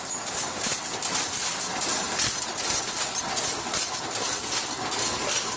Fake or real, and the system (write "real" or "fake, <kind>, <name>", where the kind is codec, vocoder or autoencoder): real